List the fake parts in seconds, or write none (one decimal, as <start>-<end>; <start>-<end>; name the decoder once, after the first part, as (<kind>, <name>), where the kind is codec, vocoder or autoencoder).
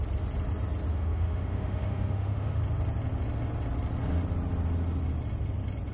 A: 0.9-2.6 (autoencoder, DAC-VAE)